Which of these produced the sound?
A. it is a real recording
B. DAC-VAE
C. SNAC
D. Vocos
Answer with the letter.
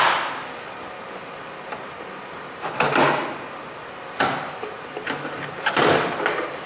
A